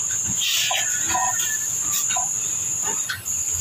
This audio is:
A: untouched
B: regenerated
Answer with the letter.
A